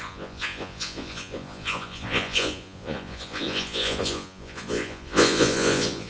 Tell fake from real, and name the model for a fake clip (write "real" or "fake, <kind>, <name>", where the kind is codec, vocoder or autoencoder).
fake, vocoder, Vocos